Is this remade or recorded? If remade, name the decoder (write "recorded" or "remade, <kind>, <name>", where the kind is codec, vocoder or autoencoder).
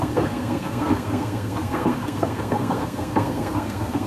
remade, codec, SNAC